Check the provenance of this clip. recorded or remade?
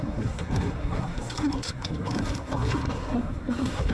remade